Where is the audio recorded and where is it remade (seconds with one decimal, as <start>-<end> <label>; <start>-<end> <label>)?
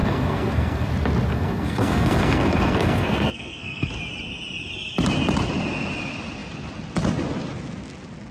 0.0-0.9 remade; 0.9-1.3 recorded; 1.3-3.9 remade; 3.9-8.3 recorded